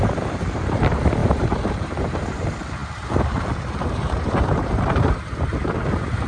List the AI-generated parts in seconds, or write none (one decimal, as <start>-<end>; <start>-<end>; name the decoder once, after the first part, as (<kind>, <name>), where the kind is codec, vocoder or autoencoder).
0.0-5.5 (vocoder, BigVGAN v2)